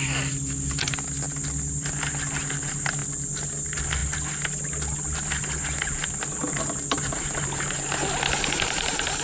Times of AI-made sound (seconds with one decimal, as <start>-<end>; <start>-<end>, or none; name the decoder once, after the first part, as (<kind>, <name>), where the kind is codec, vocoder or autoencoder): none